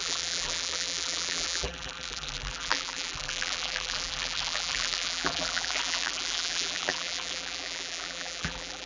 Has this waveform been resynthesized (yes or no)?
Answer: yes